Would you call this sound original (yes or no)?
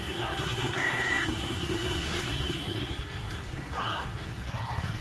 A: no